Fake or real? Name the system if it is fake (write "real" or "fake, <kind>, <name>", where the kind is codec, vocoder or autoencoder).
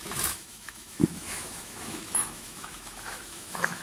fake, autoencoder, DAC-VAE